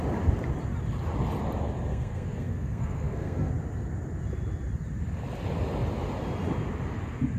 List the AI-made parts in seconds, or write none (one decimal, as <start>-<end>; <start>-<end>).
1.9-3.5